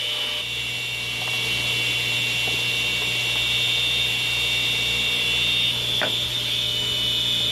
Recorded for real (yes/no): yes